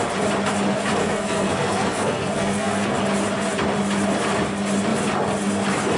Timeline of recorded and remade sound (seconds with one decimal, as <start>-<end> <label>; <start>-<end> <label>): 0.0-1.0 recorded; 1.0-2.9 remade; 2.9-6.0 recorded